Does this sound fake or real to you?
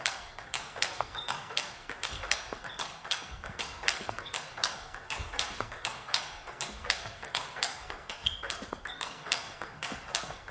fake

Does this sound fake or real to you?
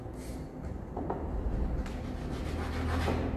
real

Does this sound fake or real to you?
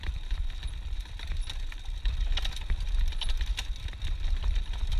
real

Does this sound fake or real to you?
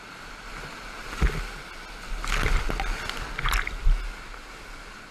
real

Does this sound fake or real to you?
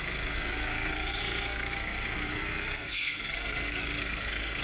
fake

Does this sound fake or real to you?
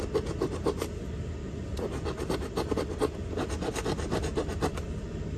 real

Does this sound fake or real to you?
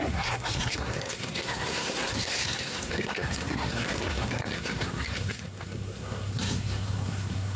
fake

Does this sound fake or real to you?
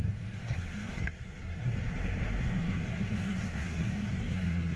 fake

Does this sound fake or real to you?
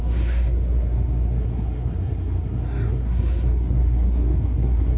fake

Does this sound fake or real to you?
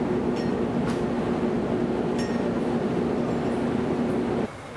real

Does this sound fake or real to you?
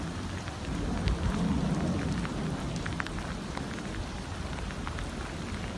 real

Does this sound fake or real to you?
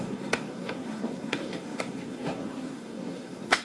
fake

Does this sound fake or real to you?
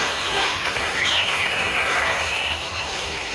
fake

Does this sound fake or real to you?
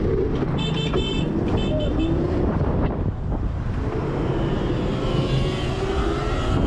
real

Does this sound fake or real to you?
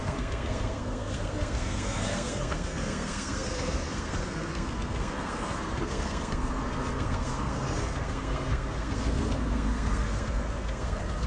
fake